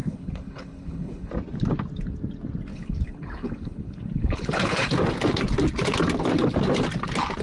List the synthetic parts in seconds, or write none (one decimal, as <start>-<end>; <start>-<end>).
0.0-1.3; 2.7-4.9